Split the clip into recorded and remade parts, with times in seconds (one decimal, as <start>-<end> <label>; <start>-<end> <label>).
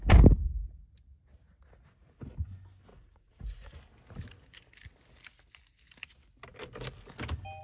0.0-2.9 recorded; 2.9-3.7 remade; 3.7-7.6 recorded